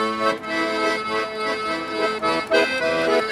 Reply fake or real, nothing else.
real